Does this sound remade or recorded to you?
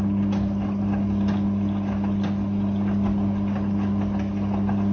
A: recorded